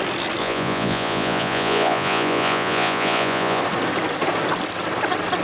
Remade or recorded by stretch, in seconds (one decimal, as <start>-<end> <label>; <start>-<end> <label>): 0.0-0.4 recorded; 0.4-3.6 remade; 3.6-5.4 recorded